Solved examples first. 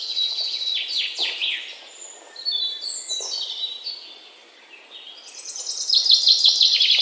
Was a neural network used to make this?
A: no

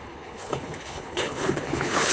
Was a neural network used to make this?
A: yes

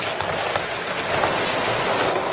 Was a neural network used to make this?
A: no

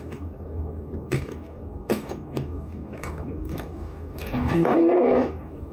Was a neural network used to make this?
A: yes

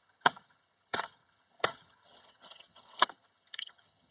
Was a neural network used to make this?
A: yes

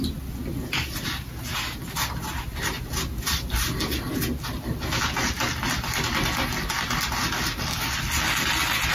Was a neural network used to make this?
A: no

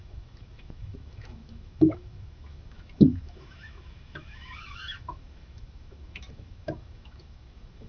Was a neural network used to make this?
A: yes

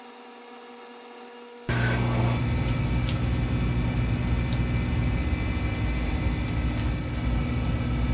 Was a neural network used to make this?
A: no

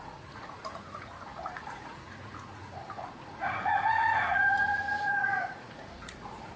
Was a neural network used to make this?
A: yes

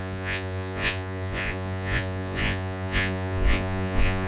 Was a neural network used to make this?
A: yes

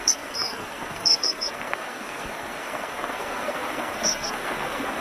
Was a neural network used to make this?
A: yes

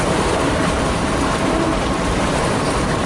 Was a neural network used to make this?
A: yes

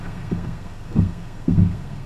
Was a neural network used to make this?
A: yes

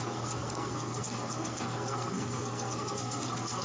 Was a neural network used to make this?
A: yes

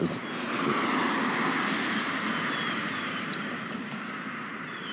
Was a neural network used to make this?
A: no